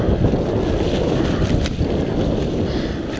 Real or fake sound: real